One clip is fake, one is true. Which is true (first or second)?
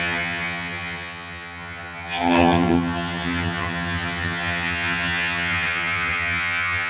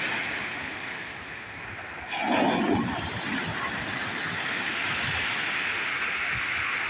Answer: second